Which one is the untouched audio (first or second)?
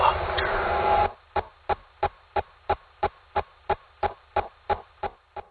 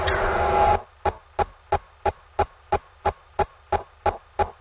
second